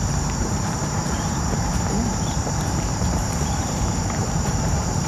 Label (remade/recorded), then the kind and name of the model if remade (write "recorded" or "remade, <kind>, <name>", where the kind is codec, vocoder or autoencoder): remade, vocoder, BigVGAN v2